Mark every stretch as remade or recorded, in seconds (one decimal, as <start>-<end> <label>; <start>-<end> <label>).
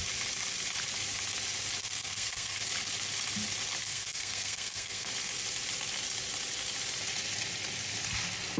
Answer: 0.0-1.8 recorded; 1.8-2.6 remade; 2.6-3.8 recorded; 3.8-5.1 remade; 5.1-8.6 recorded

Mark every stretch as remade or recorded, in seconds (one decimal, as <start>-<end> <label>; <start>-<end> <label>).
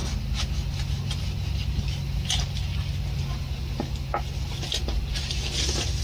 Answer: 0.0-6.0 recorded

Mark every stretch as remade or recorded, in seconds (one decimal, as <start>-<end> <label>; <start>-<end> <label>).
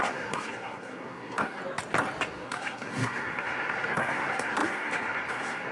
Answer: 0.0-1.6 remade; 1.6-2.3 recorded; 2.3-5.7 remade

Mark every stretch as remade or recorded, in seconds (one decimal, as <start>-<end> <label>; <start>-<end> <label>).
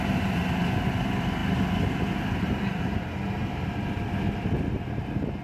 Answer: 0.0-5.4 recorded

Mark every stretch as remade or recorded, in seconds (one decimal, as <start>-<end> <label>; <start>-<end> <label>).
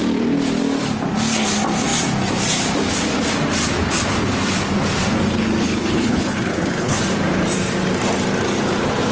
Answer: 0.0-5.6 recorded; 5.6-7.0 remade; 7.0-9.1 recorded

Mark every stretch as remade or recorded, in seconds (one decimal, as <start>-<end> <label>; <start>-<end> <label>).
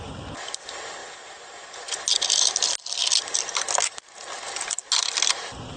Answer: 0.0-5.8 recorded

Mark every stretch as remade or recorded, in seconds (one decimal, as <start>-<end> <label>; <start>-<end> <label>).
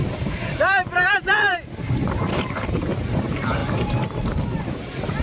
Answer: 0.0-5.2 remade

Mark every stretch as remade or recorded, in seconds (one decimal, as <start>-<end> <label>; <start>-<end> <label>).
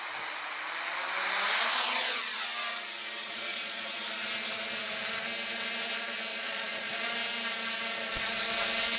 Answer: 0.0-3.2 recorded; 3.2-4.0 remade; 4.0-6.3 recorded; 6.3-7.1 remade; 7.1-9.0 recorded